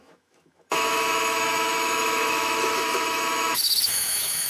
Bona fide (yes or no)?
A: no